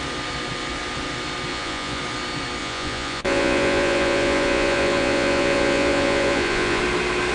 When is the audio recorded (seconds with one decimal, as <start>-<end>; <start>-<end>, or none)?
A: 0.0-1.5; 2.0-2.6; 6.8-7.3